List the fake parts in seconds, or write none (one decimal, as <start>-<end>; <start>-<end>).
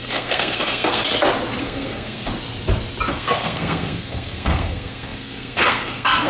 0.0-1.0; 1.6-2.3; 3.1-6.3